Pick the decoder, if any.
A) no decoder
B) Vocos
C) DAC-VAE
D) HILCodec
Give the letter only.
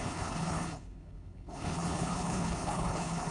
D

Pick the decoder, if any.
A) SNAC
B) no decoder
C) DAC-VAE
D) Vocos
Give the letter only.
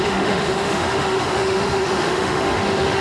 C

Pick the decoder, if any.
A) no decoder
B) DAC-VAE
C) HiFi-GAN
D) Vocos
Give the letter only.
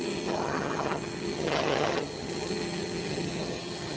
C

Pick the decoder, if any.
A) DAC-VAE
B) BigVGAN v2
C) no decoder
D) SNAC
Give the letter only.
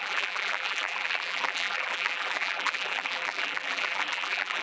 B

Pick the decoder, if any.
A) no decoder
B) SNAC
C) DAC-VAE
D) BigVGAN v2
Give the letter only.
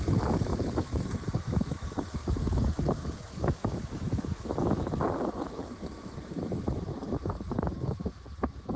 C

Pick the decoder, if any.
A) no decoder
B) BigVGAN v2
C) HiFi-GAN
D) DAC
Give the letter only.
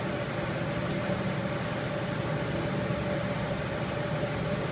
A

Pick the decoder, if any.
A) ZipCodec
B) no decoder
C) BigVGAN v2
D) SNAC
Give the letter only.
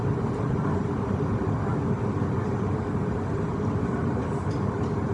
C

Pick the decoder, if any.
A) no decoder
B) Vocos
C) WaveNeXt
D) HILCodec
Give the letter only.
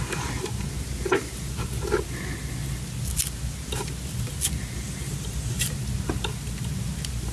A